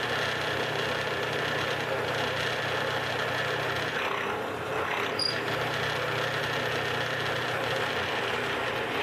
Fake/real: real